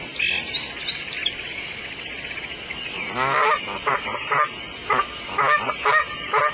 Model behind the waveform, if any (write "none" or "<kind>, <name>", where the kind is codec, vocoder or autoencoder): none